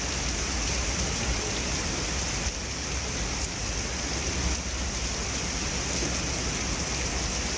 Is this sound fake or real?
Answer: real